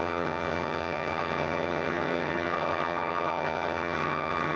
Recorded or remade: remade